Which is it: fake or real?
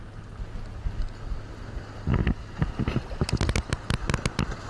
real